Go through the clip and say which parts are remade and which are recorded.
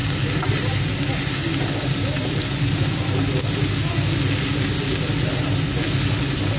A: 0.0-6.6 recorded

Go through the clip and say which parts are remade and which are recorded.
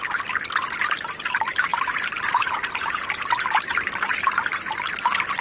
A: 0.0-1.7 recorded; 1.7-4.9 remade; 4.9-5.4 recorded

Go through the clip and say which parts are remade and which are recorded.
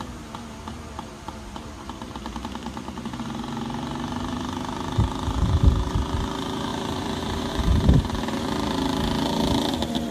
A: 0.0-6.7 recorded; 6.7-7.6 remade; 7.6-10.1 recorded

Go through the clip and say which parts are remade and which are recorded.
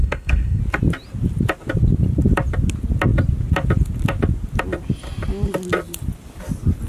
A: 0.0-0.6 remade; 0.6-6.9 recorded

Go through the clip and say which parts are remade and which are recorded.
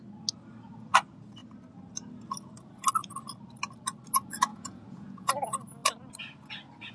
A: 0.0-4.5 recorded; 4.5-5.3 remade; 5.3-6.9 recorded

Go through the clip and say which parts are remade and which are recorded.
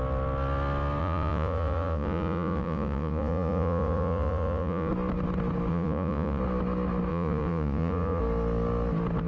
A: 0.0-1.0 recorded; 1.0-4.9 remade; 4.9-5.7 recorded; 5.7-6.4 remade; 6.4-7.1 recorded; 7.1-8.2 remade; 8.2-9.3 recorded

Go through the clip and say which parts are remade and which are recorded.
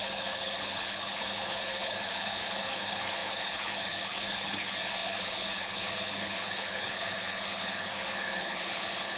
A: 0.0-9.2 remade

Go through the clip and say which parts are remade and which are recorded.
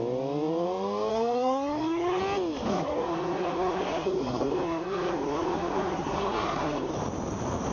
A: 0.0-1.1 recorded; 1.1-2.2 remade; 2.2-2.7 recorded; 2.7-6.9 remade; 6.9-7.7 recorded